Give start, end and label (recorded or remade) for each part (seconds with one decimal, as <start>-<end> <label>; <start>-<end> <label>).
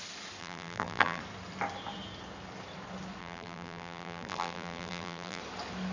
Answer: 0.0-0.4 recorded; 0.4-1.2 remade; 1.2-3.2 recorded; 3.2-5.4 remade; 5.4-5.9 recorded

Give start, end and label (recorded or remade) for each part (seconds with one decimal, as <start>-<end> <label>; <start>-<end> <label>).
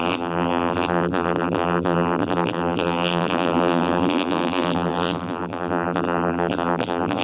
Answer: 0.0-7.2 remade